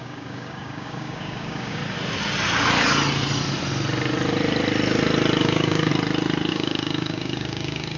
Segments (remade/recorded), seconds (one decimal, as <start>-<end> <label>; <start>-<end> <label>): 0.0-1.8 remade; 1.8-5.4 recorded; 5.4-5.9 remade; 5.9-6.5 recorded; 6.5-8.0 remade